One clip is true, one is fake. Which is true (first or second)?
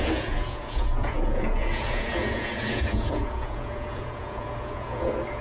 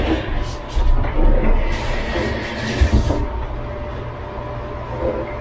second